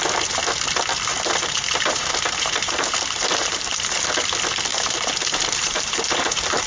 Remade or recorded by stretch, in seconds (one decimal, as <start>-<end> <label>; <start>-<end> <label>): 0.0-1.1 recorded; 1.1-4.0 remade; 4.0-4.7 recorded; 4.7-6.7 remade